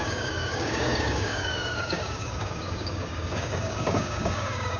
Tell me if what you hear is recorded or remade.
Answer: remade